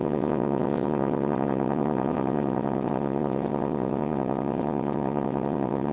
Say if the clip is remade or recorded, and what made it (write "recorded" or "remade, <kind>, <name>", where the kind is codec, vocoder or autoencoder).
remade, vocoder, WaveNeXt